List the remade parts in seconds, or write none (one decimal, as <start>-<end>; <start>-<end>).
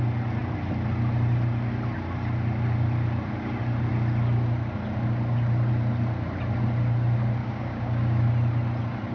7.4-8.2